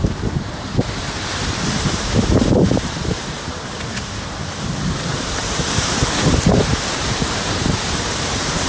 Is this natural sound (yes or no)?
no